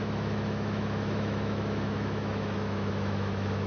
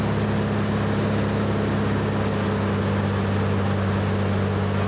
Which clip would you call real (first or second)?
second